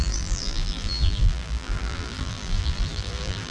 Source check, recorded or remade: remade